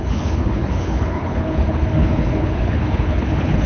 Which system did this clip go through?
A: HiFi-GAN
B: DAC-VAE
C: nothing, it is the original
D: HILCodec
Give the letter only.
D